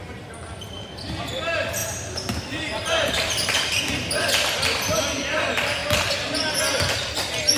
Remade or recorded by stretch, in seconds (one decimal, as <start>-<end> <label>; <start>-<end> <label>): 0.0-1.8 recorded; 1.8-3.7 remade; 3.7-7.6 recorded